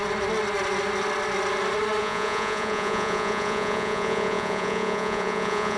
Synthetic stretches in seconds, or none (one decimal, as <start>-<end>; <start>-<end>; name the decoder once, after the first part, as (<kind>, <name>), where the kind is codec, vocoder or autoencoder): 2.0-5.8 (vocoder, Vocos)